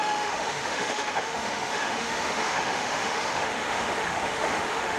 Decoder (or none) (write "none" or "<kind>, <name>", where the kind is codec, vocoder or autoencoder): autoencoder, DAC-VAE